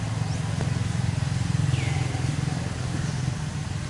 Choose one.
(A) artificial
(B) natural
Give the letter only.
B